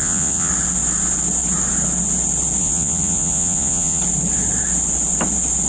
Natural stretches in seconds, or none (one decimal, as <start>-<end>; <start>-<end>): 0.5-2.6; 4.0-5.7